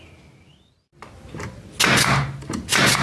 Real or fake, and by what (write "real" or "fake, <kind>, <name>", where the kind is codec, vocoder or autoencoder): real